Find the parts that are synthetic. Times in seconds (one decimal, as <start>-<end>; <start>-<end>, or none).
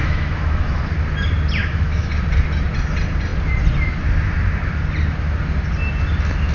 0.0-0.8; 1.6-2.1